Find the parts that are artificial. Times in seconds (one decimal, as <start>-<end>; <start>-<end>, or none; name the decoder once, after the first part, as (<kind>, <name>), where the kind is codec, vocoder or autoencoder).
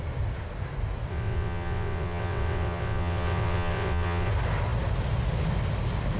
1.1-4.3 (vocoder, WaveNeXt)